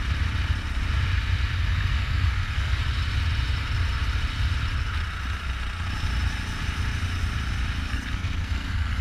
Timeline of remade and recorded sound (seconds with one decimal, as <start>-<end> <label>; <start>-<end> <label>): 0.0-1.7 recorded; 1.7-2.8 remade; 2.8-7.8 recorded; 7.8-9.0 remade